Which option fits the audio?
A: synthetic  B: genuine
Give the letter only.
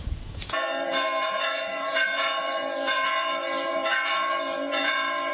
A